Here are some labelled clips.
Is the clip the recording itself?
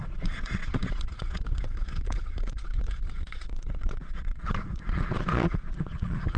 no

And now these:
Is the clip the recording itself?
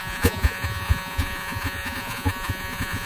no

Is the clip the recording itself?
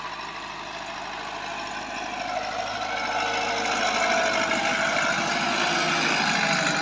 yes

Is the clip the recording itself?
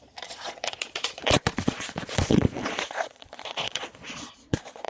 no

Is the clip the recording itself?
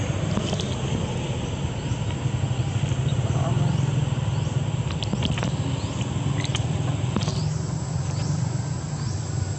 yes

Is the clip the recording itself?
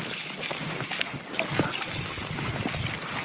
yes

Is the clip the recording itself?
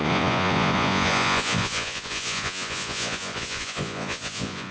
no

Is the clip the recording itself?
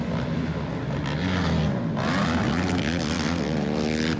yes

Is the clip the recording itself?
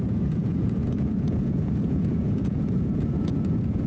no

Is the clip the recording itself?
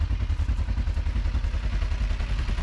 yes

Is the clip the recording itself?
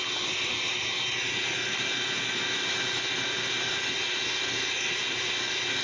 yes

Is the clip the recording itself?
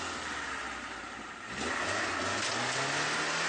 yes